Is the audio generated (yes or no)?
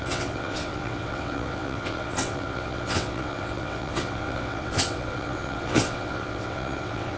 yes